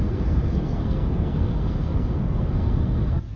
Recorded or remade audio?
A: remade